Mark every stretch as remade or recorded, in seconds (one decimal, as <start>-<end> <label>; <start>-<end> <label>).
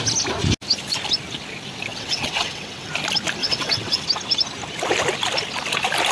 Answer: 0.0-1.9 recorded; 1.9-2.9 remade; 2.9-3.4 recorded; 3.4-4.0 remade; 4.0-6.1 recorded